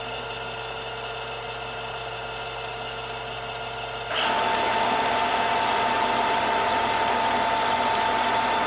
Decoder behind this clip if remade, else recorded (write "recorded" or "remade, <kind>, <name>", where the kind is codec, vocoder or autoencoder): recorded